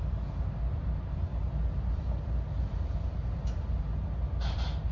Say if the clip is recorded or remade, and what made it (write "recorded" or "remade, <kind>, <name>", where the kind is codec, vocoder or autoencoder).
recorded